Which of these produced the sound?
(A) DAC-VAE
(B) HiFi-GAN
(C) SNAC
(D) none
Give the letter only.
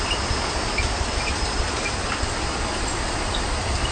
D